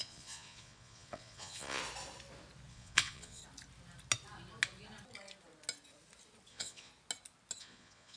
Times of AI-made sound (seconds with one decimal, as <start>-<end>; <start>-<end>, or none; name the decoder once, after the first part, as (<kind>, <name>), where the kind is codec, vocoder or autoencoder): 0.0-1.8 (vocoder, Vocos); 2.7-3.4; 6.5-6.9; 7.6-8.2

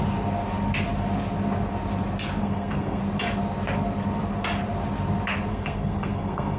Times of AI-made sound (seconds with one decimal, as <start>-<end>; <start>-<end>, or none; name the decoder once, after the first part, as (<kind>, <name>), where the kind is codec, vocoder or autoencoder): 2.4-3.0 (codec, SNAC); 5.5-6.6

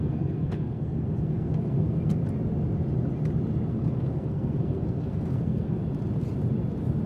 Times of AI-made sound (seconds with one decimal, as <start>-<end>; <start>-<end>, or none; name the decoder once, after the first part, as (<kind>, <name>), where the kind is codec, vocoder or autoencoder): 0.0-2.2 (codec, SNAC); 3.7-5.8